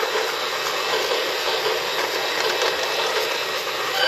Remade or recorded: recorded